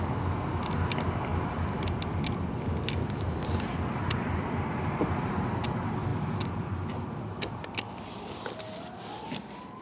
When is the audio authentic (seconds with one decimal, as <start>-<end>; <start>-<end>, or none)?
0.0-9.8